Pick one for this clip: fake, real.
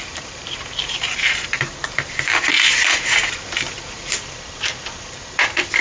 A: fake